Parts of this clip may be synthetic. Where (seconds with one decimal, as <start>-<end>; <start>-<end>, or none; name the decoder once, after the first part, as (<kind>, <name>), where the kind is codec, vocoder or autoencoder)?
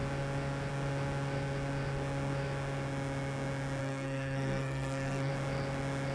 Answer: 3.8-5.3 (codec, SNAC)